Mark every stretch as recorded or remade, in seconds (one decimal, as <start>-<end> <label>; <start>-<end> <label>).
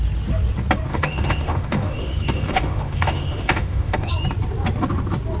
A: 0.0-0.9 recorded; 0.9-4.1 remade; 4.1-5.4 recorded